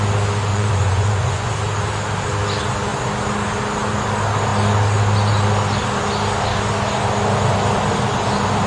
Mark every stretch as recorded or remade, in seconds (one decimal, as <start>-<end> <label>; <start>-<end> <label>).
0.0-0.5 recorded; 0.5-1.5 remade; 1.5-8.7 recorded